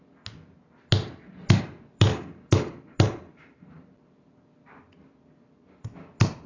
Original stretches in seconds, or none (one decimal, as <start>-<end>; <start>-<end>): 0.0-6.5